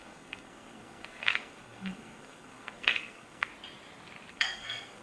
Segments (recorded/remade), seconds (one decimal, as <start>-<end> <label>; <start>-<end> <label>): 0.0-3.5 remade; 3.5-4.3 recorded; 4.3-5.0 remade